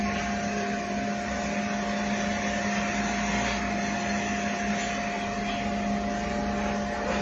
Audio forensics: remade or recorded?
recorded